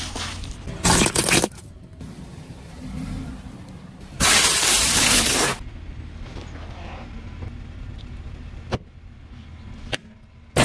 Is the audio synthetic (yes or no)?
no